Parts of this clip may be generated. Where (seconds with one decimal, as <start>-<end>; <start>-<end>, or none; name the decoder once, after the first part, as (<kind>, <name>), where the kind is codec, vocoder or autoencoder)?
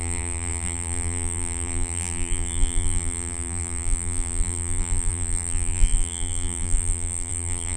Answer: 0.0-7.8 (vocoder, BigVGAN v2)